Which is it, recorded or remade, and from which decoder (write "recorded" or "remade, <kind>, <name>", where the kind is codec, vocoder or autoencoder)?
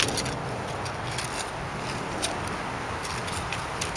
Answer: recorded